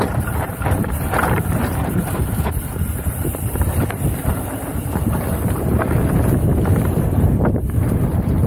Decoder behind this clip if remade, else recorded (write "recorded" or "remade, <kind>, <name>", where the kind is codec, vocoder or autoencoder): remade, vocoder, BigVGAN v2